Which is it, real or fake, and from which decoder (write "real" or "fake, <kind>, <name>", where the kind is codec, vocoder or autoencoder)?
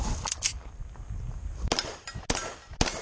real